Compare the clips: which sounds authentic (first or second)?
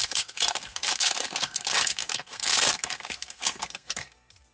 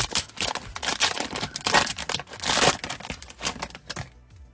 second